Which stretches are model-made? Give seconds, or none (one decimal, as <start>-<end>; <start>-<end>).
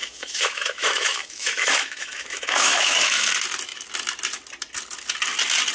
0.0-3.3